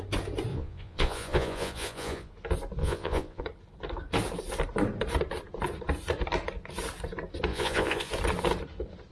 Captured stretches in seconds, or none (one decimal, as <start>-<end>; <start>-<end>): 0.0-0.5; 2.3-2.8; 3.4-7.5; 8.1-9.1